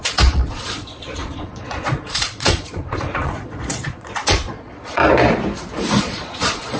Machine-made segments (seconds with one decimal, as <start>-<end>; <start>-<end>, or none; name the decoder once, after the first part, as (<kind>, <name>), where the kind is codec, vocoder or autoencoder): 0.0-5.0 (vocoder, Vocos); 6.0-6.8